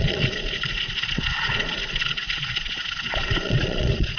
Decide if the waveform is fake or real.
fake